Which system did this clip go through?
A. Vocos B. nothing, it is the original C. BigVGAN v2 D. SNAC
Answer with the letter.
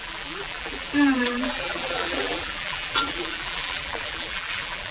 C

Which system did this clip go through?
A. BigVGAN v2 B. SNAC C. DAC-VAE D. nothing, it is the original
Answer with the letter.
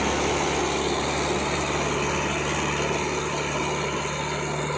D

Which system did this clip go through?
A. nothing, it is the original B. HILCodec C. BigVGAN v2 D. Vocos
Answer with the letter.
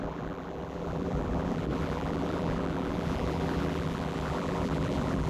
C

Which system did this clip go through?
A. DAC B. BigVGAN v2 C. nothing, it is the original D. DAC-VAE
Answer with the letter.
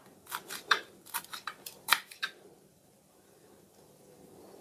B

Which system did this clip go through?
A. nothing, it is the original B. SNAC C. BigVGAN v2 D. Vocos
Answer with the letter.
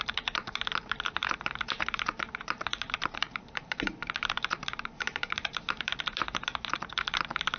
C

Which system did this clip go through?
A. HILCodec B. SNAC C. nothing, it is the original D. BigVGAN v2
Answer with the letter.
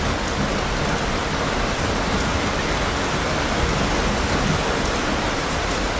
C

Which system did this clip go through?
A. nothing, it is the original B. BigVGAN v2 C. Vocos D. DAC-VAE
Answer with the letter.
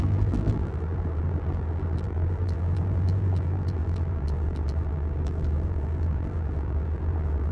B